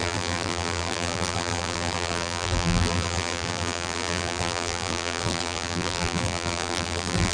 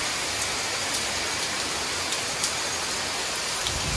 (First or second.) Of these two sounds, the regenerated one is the first